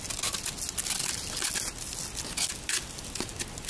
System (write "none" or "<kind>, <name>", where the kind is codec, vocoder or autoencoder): none